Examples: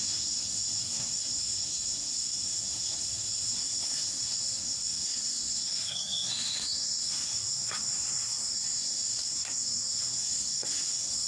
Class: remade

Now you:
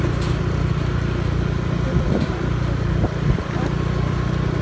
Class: recorded